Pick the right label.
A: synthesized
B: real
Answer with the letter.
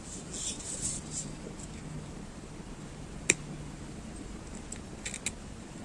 B